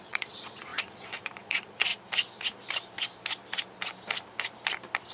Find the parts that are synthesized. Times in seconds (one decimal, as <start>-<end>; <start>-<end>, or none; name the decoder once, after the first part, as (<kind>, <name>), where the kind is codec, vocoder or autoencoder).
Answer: 0.0-1.9 (vocoder, Vocos)